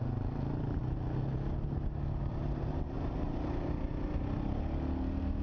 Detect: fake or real real